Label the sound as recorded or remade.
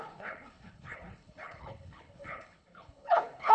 remade